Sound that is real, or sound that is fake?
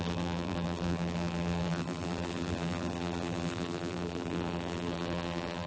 fake